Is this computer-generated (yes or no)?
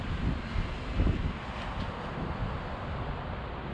no